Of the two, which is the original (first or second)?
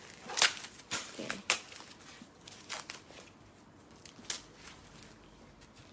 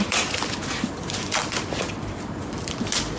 first